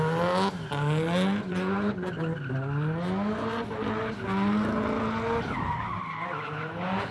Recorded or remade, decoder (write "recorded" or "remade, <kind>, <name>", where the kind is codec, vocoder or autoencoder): recorded